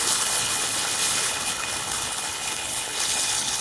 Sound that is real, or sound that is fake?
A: fake